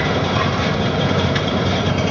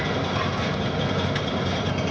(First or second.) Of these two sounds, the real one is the second